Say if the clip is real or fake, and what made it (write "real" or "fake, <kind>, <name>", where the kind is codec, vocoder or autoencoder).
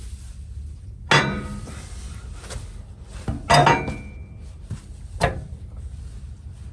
real